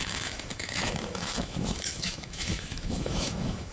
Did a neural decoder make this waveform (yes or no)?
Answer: yes